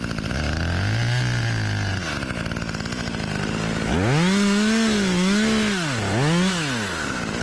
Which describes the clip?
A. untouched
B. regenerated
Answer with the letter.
A